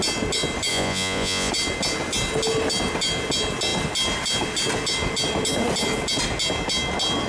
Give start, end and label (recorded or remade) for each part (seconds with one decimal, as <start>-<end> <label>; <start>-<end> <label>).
0.0-0.7 recorded; 0.7-1.5 remade; 1.5-7.3 recorded